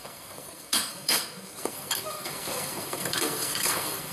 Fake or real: fake